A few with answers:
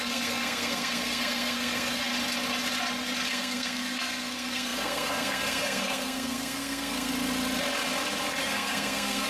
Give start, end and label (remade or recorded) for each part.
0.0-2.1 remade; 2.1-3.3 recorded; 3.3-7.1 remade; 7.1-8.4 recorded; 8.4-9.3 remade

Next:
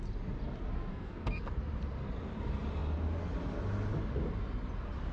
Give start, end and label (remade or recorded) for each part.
0.0-0.9 recorded; 0.9-1.5 remade; 1.5-5.1 recorded

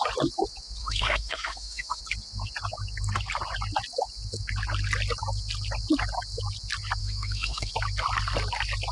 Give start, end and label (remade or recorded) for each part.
0.0-0.8 recorded; 0.8-2.0 remade; 2.0-7.0 recorded; 7.0-7.7 remade; 7.7-8.9 recorded

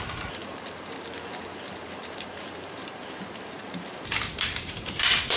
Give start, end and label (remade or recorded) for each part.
0.0-5.4 remade

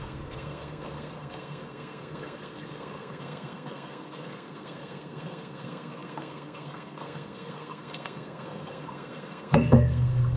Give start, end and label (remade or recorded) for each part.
0.0-10.4 remade

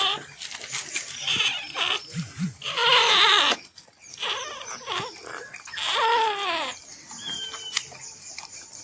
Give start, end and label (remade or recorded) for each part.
0.0-8.8 recorded

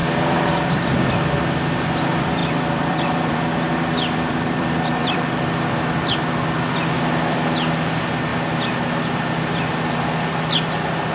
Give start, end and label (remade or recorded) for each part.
0.0-1.1 remade; 1.1-2.4 recorded; 2.4-6.2 remade; 6.2-8.3 recorded; 8.3-8.8 remade; 8.8-11.1 recorded

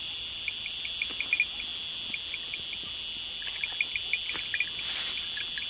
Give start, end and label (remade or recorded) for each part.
0.0-5.7 recorded